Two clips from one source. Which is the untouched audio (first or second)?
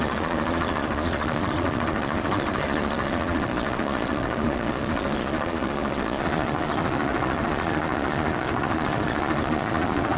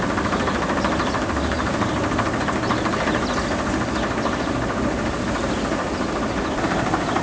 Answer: second